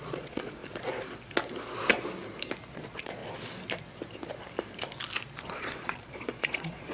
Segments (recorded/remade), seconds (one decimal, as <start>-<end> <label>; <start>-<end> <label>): 0.0-0.6 remade; 0.6-2.7 recorded; 2.7-3.2 remade; 3.2-5.4 recorded; 5.4-6.9 remade